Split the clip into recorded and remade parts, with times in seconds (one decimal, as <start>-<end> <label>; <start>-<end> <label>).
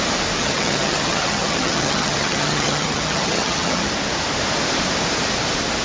0.0-0.4 recorded; 0.4-3.9 remade; 3.9-5.8 recorded